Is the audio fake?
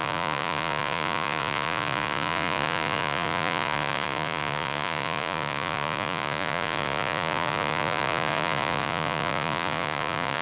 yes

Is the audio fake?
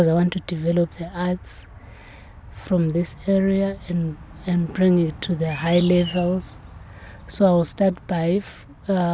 no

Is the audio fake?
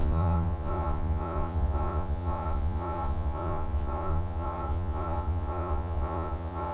yes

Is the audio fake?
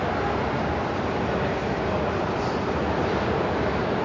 no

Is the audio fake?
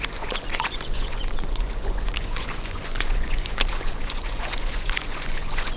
yes